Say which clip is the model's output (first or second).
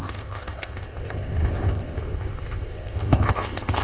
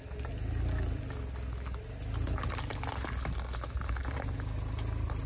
first